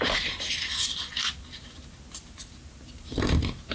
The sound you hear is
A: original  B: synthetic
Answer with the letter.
A